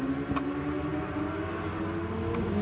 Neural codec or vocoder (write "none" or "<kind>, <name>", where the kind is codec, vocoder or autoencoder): none